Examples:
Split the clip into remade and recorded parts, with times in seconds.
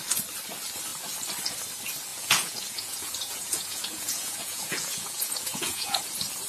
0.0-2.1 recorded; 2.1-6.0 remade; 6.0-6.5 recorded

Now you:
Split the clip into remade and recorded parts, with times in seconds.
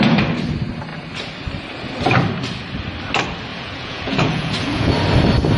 0.0-3.5 recorded; 3.5-4.9 remade; 4.9-5.6 recorded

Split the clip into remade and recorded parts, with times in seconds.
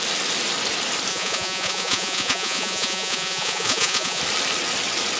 0.0-1.1 recorded; 1.1-4.2 remade; 4.2-5.2 recorded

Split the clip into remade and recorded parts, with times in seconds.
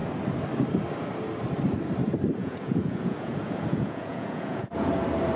0.0-2.4 recorded; 2.4-4.9 remade; 4.9-5.4 recorded